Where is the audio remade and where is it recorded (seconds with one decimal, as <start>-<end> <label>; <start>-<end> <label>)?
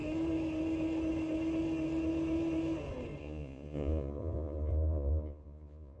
0.0-3.2 recorded; 3.2-6.0 remade